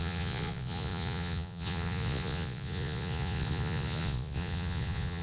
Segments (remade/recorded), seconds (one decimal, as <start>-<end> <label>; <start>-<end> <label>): 0.0-5.2 remade